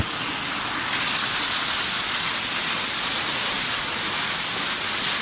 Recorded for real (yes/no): yes